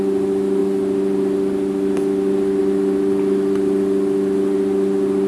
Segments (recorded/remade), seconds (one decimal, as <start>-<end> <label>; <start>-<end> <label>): 0.0-5.3 recorded